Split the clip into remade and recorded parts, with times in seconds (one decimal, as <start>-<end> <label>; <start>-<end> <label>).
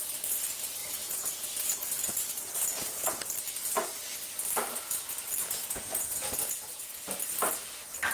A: 0.0-0.8 recorded; 0.8-3.3 remade; 3.3-5.4 recorded; 5.4-7.0 remade; 7.0-8.1 recorded